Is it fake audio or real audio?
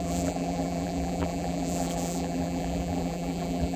fake